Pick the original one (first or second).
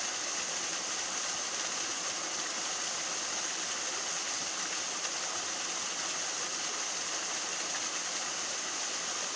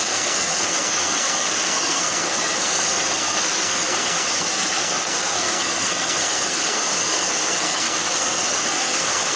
first